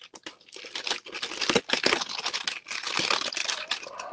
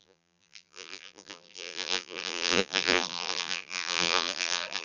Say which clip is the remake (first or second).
second